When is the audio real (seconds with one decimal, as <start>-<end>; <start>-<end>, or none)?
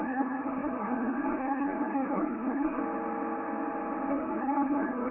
2.8-4.1